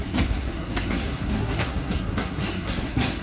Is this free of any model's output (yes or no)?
no